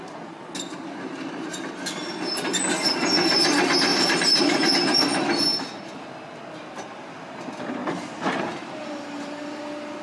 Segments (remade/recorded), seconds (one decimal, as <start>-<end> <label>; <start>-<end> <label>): 0.0-3.9 recorded; 3.9-4.7 remade; 4.7-7.8 recorded; 7.8-8.4 remade; 8.4-8.8 recorded; 8.8-9.6 remade; 9.6-10.0 recorded